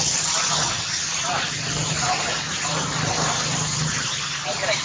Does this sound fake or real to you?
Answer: real